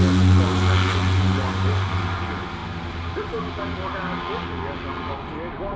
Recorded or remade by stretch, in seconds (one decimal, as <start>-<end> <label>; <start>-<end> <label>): 0.0-5.8 recorded